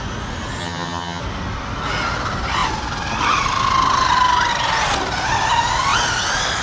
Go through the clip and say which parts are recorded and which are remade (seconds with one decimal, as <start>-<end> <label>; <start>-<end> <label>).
0.0-0.6 recorded; 0.6-1.2 remade; 1.2-6.6 recorded